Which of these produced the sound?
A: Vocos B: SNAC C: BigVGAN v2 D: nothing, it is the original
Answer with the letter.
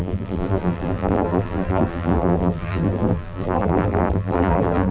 C